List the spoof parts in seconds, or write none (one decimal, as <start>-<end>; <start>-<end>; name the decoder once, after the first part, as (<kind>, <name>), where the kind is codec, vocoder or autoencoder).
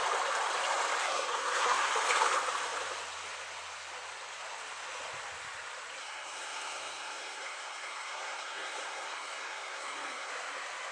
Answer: 1.0-1.9 (codec, SNAC); 6.0-10.3